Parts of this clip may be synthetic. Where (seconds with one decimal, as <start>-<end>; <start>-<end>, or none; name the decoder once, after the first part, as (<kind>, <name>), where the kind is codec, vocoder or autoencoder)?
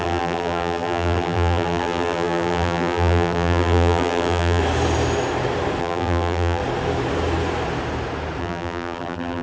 0.0-4.6 (vocoder, BigVGAN v2); 5.8-6.6; 8.4-9.4